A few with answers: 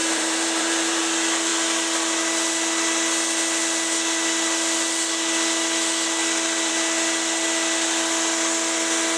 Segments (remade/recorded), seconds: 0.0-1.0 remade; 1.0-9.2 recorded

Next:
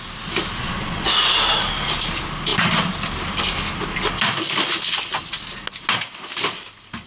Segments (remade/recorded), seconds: 0.0-0.6 recorded; 0.6-1.1 remade; 1.1-7.1 recorded